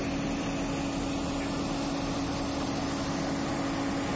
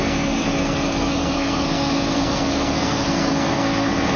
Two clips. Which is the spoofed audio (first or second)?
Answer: second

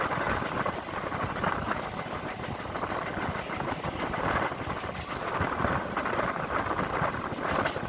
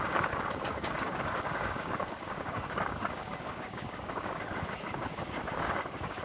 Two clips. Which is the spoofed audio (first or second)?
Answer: second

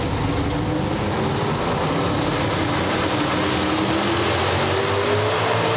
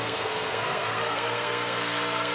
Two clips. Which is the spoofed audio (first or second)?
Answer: second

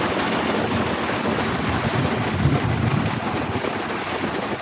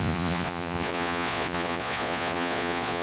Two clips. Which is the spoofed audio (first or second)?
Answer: second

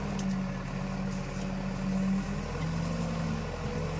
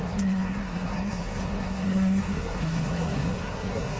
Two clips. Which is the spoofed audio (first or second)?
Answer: second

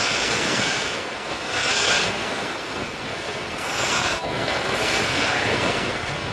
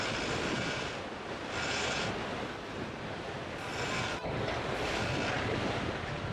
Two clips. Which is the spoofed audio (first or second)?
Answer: first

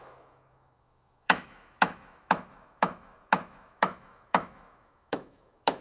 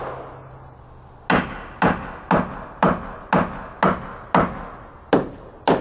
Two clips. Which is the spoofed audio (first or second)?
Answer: first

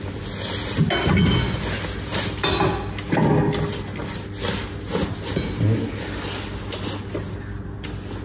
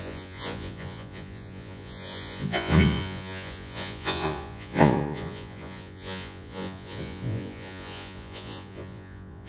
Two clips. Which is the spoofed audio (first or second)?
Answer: second